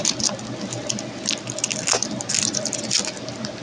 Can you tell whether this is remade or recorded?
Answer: recorded